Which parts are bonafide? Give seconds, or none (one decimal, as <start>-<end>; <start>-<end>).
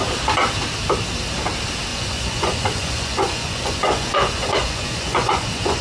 0.0-1.9